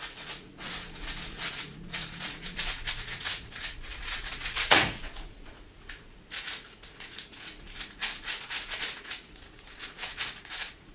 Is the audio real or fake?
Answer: fake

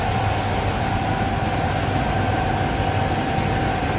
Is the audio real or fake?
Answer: real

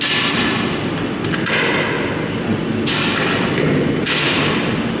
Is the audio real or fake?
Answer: real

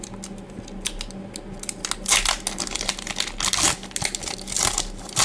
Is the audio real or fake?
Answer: real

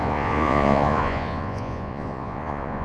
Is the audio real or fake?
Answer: fake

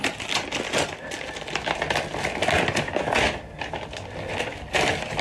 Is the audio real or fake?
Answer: real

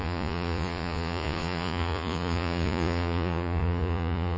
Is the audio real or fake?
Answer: fake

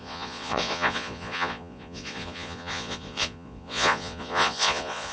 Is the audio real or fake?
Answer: fake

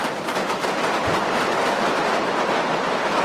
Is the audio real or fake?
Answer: real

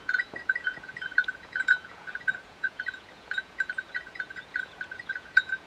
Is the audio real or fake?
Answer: fake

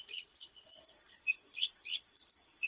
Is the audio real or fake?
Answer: fake